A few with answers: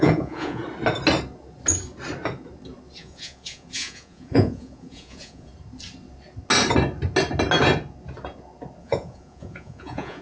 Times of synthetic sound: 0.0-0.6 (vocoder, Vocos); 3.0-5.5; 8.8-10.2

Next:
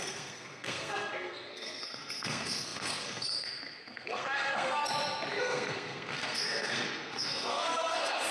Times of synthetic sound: 0.0-4.8 (codec, SNAC); 5.4-8.3

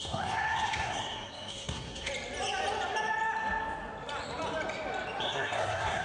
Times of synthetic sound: 0.0-2.1 (codec, SNAC); 5.2-6.0

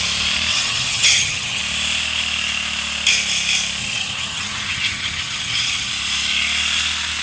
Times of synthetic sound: 0.5-1.6 (vocoder, HiFi-GAN); 3.8-5.9